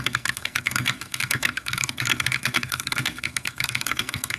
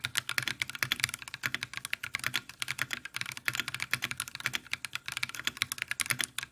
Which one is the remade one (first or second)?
first